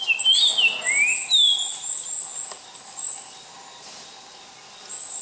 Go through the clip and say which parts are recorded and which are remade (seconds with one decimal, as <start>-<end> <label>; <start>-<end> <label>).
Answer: 0.0-5.2 recorded